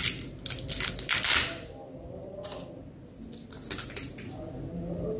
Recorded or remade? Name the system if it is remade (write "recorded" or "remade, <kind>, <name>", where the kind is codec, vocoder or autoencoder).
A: recorded